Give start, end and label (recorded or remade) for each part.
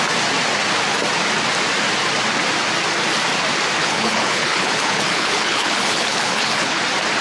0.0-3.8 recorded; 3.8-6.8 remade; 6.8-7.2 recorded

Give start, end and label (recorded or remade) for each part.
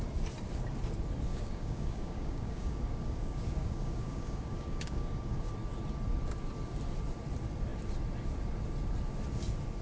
0.0-1.3 recorded; 1.3-5.5 remade; 5.5-9.8 recorded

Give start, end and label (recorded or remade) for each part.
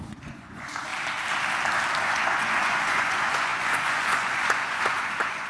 0.0-0.9 remade; 0.9-2.0 recorded; 2.0-5.5 remade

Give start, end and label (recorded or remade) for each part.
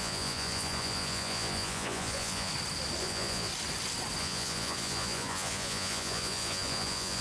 0.0-2.5 remade; 2.5-3.0 recorded; 3.0-3.5 remade; 3.5-4.2 recorded; 4.2-7.2 remade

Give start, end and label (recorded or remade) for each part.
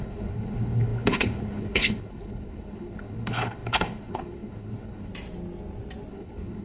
0.0-5.1 remade; 5.1-6.1 recorded; 6.1-6.6 remade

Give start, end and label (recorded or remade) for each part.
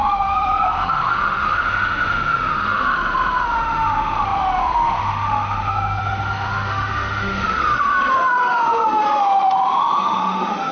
0.0-10.7 remade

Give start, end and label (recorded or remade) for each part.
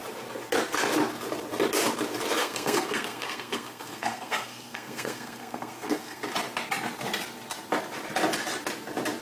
0.0-2.4 recorded; 2.4-6.2 remade; 6.2-9.2 recorded